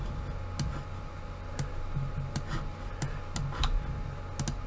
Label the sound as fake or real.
real